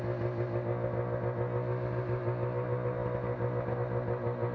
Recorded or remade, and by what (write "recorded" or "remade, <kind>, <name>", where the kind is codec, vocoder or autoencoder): recorded